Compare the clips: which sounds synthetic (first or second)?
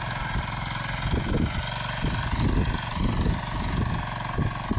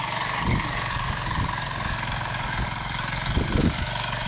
second